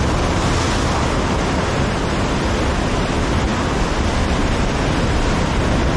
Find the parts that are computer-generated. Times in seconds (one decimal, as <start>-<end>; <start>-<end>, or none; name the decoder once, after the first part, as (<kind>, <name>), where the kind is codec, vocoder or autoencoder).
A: none